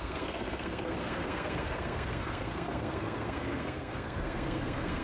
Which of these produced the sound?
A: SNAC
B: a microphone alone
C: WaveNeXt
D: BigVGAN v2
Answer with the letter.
A